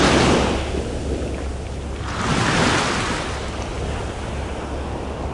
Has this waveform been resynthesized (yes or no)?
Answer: no